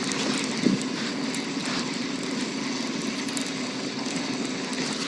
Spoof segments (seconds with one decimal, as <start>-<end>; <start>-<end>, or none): 1.6-3.2